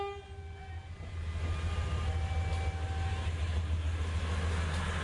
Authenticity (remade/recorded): recorded